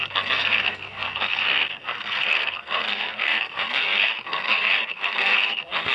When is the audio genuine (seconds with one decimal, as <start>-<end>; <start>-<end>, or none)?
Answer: none